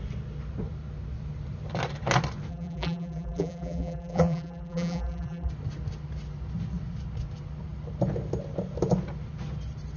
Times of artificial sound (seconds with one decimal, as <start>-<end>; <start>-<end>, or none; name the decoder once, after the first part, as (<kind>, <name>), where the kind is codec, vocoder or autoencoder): 2.5-5.5 (vocoder, BigVGAN v2)

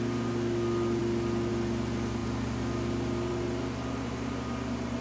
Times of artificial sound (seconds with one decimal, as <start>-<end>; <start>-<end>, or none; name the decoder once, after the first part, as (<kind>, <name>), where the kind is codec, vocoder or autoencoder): none

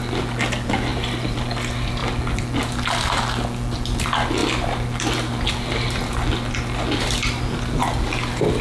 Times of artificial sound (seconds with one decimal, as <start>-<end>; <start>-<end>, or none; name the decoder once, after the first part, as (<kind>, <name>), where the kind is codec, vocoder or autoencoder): 0.9-1.4 (vocoder, BigVGAN v2)

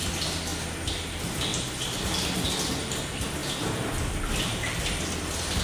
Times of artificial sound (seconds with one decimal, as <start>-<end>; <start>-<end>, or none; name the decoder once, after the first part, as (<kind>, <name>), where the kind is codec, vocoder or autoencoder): 0.0-0.5 (vocoder, BigVGAN v2); 1.0-3.4; 4.1-5.6

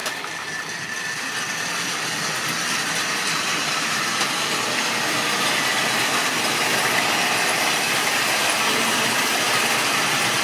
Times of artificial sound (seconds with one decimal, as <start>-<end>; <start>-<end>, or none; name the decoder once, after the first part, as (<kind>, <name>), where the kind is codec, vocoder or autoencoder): 0.0-5.7 (vocoder, BigVGAN v2); 6.7-10.4

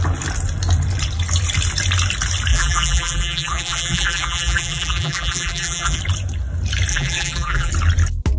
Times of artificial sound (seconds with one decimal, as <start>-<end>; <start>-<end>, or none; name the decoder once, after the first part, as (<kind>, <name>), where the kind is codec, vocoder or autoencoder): 2.5-6.0 (vocoder, BigVGAN v2); 6.9-7.7

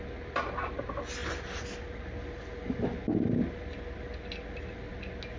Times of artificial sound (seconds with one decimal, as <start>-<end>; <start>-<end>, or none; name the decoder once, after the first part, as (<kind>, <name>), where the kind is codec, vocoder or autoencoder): none